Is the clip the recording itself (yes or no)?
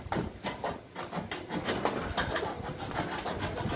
yes